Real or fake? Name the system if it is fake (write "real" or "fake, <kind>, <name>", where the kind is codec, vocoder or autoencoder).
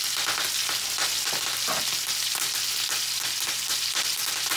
real